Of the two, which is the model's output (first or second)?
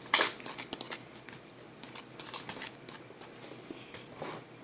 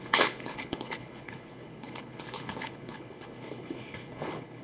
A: second